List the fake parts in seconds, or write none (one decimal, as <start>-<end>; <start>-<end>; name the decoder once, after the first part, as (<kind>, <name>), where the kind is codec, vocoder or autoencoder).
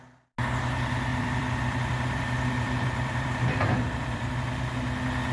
1.1-4.3 (vocoder, BigVGAN v2)